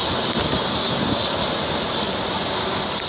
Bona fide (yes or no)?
yes